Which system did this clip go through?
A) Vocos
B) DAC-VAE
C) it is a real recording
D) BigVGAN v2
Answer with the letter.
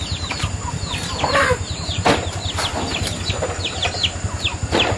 C